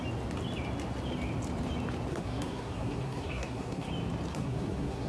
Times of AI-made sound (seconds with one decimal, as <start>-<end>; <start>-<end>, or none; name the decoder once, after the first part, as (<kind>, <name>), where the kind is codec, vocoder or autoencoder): 2.1-3.9 (codec, SNAC); 4.3-5.1